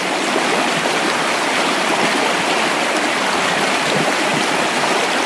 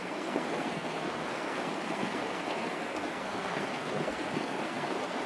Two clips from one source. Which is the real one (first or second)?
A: first